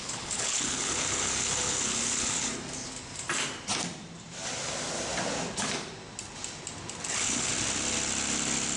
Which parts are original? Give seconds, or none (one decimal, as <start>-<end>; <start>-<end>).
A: 2.5-7.1; 7.5-8.8